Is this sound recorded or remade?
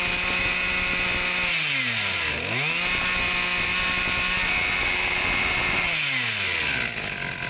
recorded